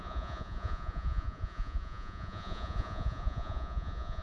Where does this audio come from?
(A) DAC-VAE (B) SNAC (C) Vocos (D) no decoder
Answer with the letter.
C